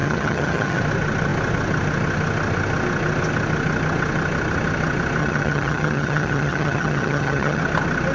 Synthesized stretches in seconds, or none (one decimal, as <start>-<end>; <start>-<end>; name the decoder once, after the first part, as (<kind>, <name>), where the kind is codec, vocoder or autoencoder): 0.0-0.8 (vocoder, HiFi-GAN); 5.2-7.6